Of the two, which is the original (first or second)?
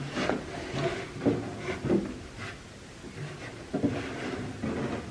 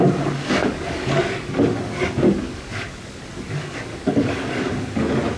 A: first